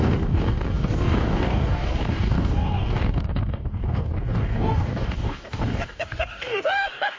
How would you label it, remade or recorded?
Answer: remade